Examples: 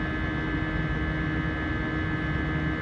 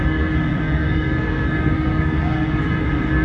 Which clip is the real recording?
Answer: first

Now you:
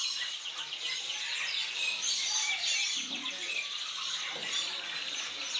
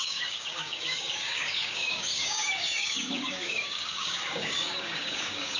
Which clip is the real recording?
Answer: first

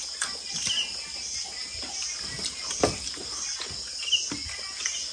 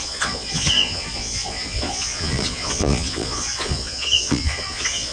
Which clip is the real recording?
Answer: first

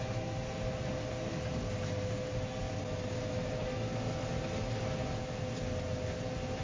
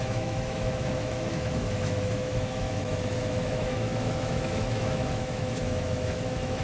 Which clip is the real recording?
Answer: first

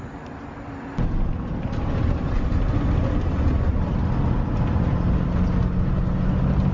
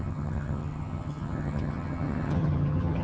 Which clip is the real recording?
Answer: first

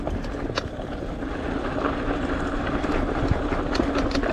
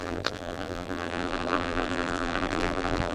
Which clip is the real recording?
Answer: first